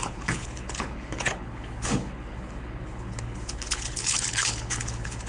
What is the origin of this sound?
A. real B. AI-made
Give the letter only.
B